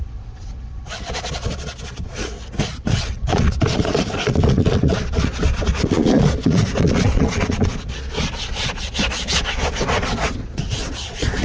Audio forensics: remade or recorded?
remade